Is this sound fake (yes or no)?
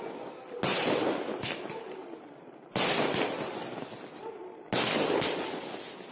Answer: no